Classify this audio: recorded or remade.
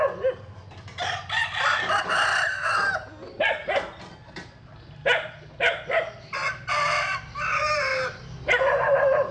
recorded